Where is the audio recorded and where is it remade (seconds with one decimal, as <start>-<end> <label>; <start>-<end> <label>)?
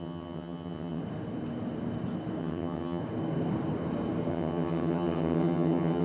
0.0-1.0 remade; 1.0-2.4 recorded; 2.4-3.0 remade; 3.0-4.3 recorded; 4.3-6.0 remade